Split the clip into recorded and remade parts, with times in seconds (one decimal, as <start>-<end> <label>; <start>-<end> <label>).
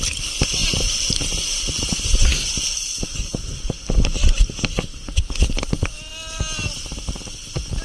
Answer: 0.0-2.6 recorded; 2.6-3.5 remade; 3.5-6.1 recorded; 6.1-6.8 remade; 6.8-7.8 recorded